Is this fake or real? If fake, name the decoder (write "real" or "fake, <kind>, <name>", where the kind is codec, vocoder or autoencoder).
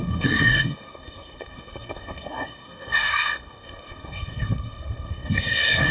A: fake, codec, SNAC